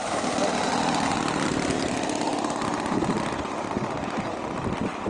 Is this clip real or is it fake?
real